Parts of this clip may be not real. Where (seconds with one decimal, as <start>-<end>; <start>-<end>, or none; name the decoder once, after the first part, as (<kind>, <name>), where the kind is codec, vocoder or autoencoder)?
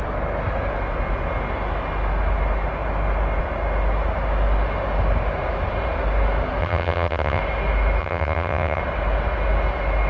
6.6-7.4 (vocoder, HiFi-GAN); 8.0-8.8